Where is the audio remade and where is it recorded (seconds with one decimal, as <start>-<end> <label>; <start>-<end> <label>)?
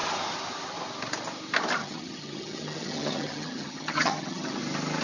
0.0-1.8 recorded; 1.8-4.6 remade; 4.6-5.0 recorded